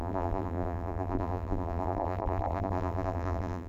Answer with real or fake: fake